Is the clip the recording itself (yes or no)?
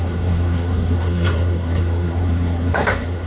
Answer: no